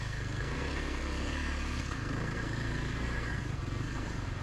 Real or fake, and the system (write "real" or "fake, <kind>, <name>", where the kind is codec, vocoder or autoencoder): fake, codec, SNAC